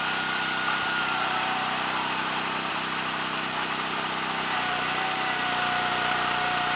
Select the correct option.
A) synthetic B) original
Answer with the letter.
A